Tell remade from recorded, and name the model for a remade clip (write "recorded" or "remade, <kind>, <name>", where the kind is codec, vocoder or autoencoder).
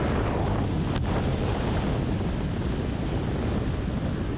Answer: recorded